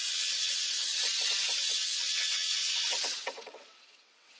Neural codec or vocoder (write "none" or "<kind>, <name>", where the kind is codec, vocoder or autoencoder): vocoder, WaveNeXt